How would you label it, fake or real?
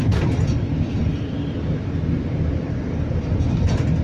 real